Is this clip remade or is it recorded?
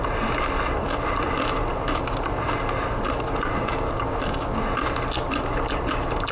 recorded